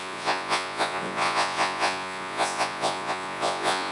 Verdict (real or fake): fake